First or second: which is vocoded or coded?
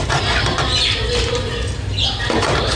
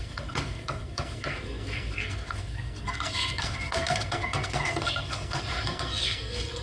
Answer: second